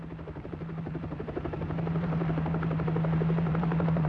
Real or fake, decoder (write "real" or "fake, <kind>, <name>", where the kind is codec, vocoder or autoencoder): fake, vocoder, BigVGAN v2